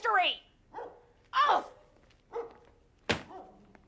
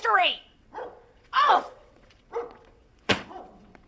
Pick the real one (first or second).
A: first